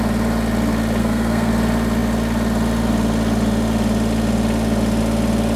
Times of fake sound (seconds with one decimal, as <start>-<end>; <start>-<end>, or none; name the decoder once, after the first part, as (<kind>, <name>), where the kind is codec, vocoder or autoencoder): 1.0-1.5 (codec, SNAC)